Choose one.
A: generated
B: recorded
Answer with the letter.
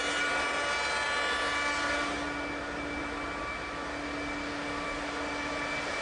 B